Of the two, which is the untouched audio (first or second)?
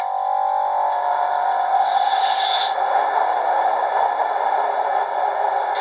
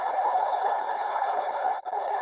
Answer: first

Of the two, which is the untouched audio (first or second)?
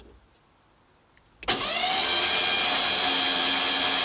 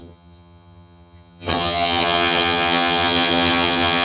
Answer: first